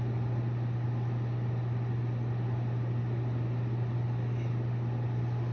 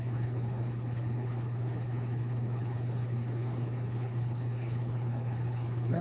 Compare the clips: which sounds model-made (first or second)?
second